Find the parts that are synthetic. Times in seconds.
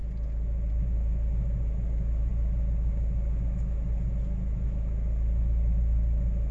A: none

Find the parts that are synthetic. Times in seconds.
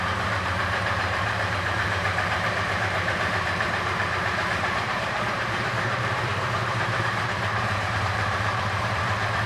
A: 0.0-6.3 (vocoder, BigVGAN v2); 7.0-9.5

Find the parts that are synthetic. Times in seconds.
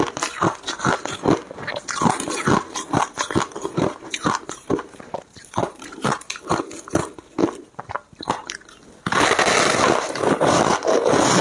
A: 3.8-6.6 (vocoder, BigVGAN v2)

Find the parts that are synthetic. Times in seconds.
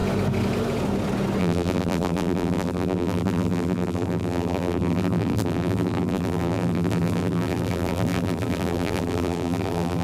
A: 1.4-10.0 (vocoder, BigVGAN v2)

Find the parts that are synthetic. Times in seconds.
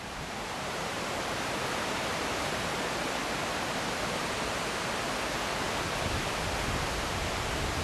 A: 0.0-2.7 (vocoder, BigVGAN v2)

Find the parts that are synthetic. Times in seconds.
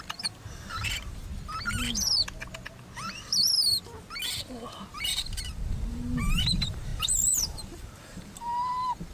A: 0.0-1.3 (vocoder, BigVGAN v2); 4.9-9.1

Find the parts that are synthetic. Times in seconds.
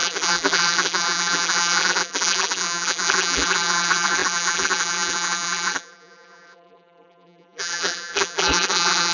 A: 0.0-9.1 (vocoder, BigVGAN v2)